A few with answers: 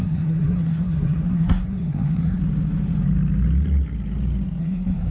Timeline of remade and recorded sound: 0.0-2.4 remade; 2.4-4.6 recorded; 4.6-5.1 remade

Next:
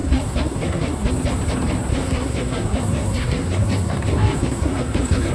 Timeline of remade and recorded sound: 0.0-1.1 remade; 1.1-1.9 recorded; 1.9-5.3 remade

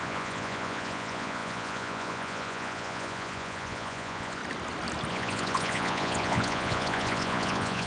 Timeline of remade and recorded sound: 0.0-4.4 remade; 4.4-5.1 recorded; 5.1-7.9 remade

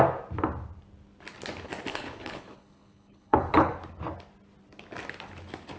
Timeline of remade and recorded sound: 0.0-1.9 recorded; 1.9-3.7 remade; 3.7-5.8 recorded